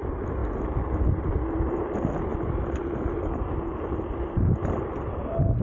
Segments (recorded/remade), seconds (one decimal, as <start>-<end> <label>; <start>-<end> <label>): 0.0-5.6 recorded